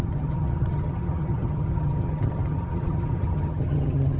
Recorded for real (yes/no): no